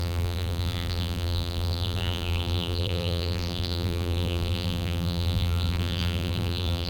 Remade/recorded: remade